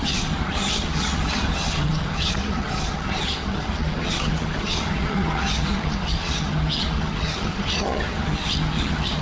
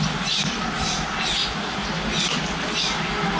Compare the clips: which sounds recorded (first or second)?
second